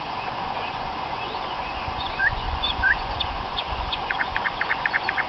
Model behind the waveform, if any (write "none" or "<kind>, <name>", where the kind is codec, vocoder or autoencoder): vocoder, Vocos